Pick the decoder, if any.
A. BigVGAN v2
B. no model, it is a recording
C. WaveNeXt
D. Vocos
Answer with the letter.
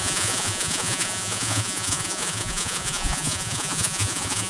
D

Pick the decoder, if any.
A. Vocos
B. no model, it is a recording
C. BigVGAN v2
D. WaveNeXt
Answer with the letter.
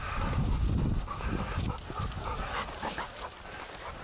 B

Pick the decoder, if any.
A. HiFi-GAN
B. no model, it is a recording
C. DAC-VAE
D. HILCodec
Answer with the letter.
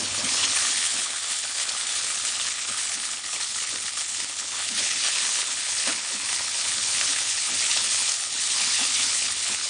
D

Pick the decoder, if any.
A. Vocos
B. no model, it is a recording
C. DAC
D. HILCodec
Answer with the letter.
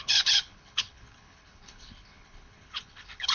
D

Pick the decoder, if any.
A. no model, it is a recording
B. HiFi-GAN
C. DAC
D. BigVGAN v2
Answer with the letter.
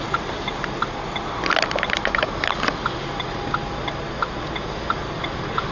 A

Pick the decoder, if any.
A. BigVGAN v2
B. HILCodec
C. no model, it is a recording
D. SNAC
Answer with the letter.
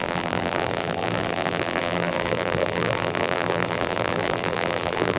A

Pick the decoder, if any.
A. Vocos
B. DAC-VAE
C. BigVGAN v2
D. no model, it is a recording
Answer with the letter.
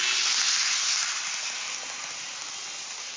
D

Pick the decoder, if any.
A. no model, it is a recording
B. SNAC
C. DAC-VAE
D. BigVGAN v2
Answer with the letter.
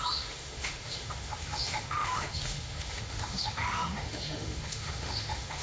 C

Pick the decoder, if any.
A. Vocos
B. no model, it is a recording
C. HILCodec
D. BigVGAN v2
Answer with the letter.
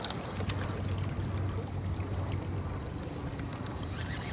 B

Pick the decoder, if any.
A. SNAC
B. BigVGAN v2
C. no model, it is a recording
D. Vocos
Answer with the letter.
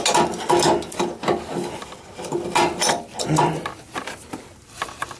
C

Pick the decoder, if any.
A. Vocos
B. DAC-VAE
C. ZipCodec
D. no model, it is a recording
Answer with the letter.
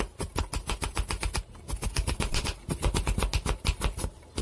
D